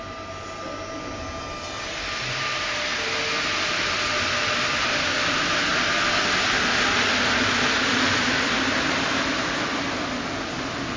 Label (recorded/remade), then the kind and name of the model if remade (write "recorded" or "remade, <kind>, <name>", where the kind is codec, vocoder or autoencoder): recorded